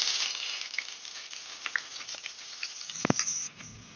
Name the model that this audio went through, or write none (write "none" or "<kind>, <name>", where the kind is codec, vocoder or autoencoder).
none